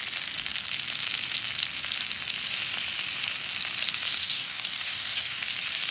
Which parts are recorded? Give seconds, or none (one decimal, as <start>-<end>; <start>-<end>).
0.0-4.1; 5.4-5.9